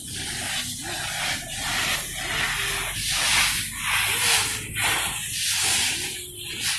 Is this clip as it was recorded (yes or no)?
yes